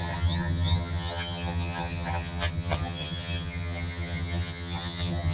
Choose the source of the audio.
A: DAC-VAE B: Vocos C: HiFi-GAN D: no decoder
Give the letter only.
C